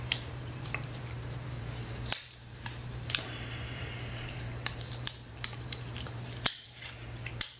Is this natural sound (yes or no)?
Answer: no